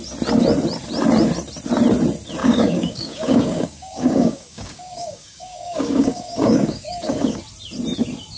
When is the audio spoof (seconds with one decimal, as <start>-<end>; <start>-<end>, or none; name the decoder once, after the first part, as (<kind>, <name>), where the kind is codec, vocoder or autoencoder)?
2.4-7.4 (codec, DAC)